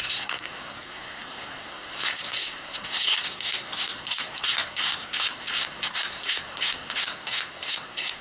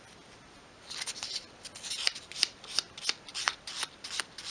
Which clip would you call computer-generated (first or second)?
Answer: first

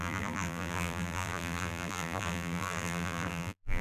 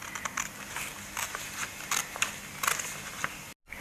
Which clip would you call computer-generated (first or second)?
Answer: first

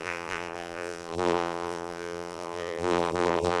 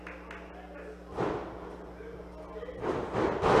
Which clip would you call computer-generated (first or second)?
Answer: first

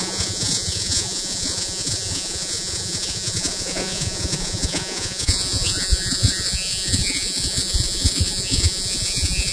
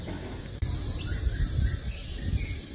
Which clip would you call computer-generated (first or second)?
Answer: first